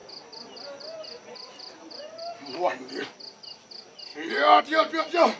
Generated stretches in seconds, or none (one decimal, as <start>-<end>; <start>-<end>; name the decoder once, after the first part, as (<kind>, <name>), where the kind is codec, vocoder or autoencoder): 0.0-3.2 (vocoder, BigVGAN v2)